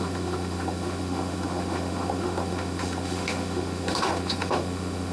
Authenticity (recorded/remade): remade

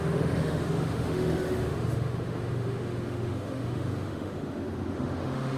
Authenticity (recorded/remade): remade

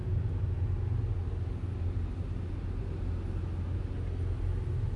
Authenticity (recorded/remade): recorded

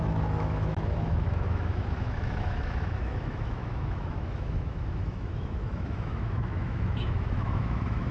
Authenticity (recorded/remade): remade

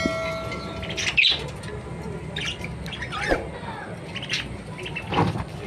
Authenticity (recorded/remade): recorded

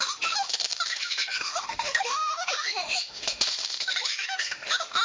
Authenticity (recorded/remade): remade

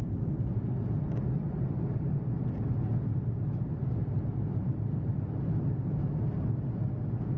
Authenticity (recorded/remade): recorded